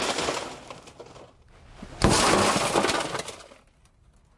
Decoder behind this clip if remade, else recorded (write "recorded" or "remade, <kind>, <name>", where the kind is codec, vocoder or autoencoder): recorded